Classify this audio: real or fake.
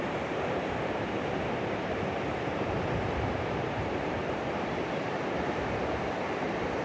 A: fake